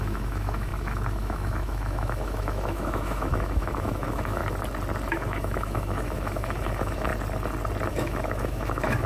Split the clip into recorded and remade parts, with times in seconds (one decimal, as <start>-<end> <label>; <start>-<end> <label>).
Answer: 0.0-4.4 remade; 4.4-5.1 recorded; 5.1-7.1 remade; 7.1-7.9 recorded; 7.9-9.1 remade